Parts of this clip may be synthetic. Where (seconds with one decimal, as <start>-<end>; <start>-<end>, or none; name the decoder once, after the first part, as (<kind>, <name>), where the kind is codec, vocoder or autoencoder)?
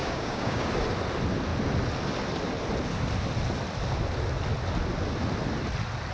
0.0-0.7 (codec, DAC)